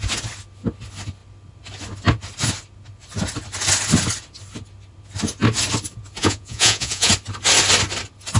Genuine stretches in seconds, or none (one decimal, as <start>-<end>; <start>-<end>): 0.0-6.2; 7.1-8.4

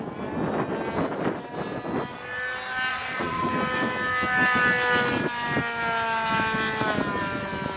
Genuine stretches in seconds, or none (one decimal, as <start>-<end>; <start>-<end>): 0.0-2.9; 3.5-7.8

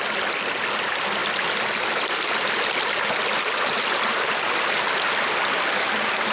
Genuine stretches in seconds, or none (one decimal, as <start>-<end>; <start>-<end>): 0.0-6.3

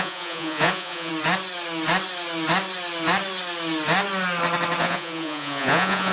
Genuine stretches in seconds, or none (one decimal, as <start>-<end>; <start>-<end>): 1.1-4.8

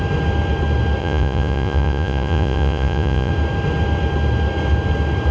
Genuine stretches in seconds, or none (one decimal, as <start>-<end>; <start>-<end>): 0.0-1.0; 3.3-5.3

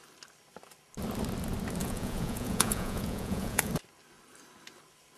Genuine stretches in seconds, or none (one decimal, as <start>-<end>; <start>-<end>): 0.0-1.8; 3.7-5.2

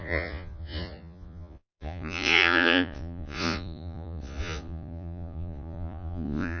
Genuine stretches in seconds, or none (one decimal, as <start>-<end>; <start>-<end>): none

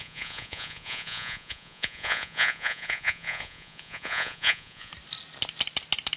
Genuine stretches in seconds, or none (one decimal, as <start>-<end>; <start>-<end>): 4.9-6.2